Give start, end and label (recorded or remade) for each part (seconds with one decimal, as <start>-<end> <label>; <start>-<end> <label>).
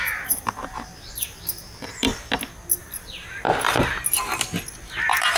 0.0-2.1 remade; 2.1-2.8 recorded; 2.8-4.0 remade; 4.0-4.7 recorded; 4.7-5.4 remade